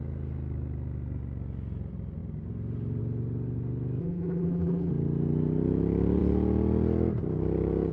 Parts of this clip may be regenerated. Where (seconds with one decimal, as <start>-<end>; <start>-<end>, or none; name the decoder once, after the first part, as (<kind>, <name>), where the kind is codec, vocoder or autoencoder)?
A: 4.0-4.9 (vocoder, BigVGAN v2)